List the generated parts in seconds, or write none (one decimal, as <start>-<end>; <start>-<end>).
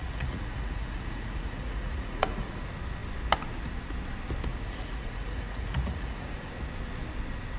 0.0-2.6; 4.5-6.5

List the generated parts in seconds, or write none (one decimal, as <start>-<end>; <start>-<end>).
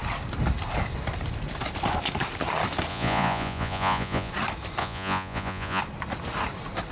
2.9-4.3; 4.8-5.8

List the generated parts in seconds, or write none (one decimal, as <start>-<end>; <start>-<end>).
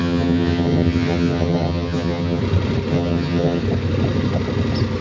0.0-2.4; 2.9-3.6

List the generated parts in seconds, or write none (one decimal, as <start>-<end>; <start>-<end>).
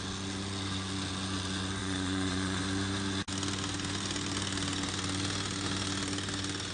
1.8-2.6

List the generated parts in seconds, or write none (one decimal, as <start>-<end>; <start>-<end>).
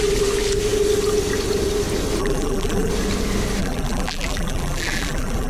2.2-2.9; 3.6-5.5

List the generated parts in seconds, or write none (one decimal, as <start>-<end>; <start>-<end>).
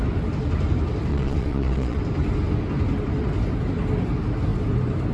1.1-2.0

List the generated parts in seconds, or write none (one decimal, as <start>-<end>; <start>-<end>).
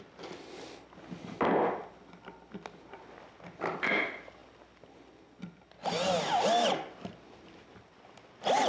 none